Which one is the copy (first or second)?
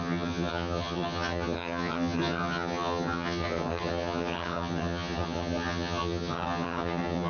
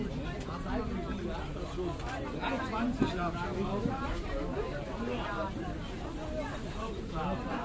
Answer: first